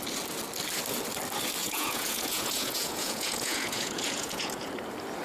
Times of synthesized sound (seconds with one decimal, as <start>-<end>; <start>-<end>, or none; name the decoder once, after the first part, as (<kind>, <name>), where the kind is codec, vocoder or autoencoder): 1.6-4.7 (vocoder, Vocos)